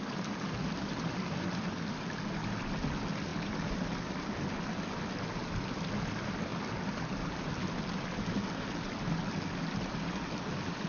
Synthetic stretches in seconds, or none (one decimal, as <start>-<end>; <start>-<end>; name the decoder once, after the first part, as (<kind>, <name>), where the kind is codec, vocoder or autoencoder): none